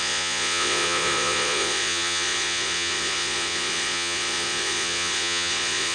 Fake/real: fake